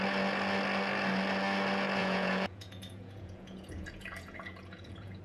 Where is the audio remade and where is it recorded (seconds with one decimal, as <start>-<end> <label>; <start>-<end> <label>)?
0.0-2.0 recorded; 2.0-5.2 remade

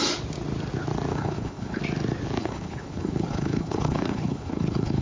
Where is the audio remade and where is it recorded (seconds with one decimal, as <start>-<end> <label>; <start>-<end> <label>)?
0.0-1.1 recorded; 1.1-1.8 remade; 1.8-2.4 recorded; 2.4-5.0 remade